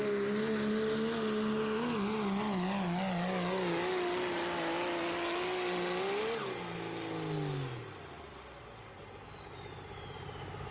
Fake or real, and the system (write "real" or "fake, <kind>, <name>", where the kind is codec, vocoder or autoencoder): real